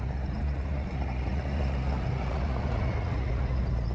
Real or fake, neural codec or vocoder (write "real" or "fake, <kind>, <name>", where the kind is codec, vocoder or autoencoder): fake, vocoder, Vocos